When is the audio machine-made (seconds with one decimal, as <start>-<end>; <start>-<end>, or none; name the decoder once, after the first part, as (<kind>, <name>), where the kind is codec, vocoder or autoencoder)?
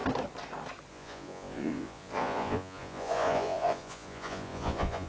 0.9-5.1 (vocoder, Vocos)